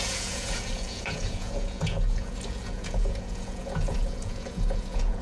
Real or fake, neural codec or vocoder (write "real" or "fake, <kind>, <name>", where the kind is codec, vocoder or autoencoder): fake, vocoder, Vocos